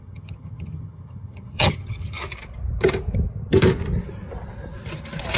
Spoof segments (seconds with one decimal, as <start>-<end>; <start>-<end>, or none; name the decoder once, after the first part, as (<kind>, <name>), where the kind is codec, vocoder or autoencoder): 0.0-2.2 (vocoder, HiFi-GAN)